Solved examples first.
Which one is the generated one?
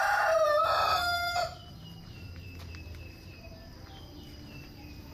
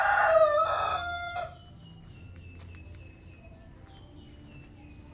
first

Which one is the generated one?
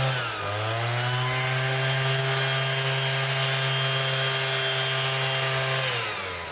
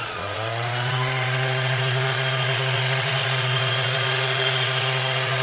second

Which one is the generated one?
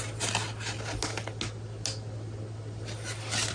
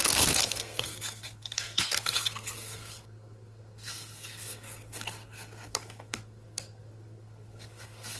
second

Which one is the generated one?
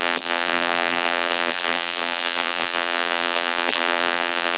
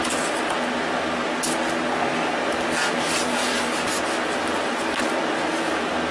first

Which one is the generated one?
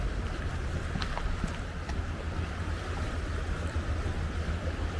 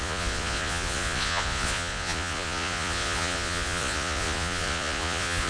second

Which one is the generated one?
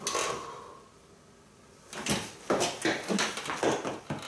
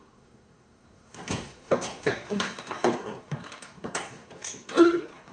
second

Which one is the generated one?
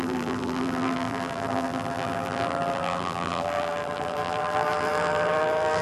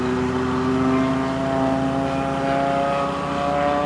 first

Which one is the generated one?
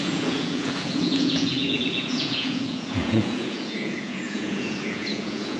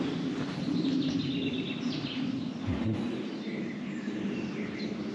first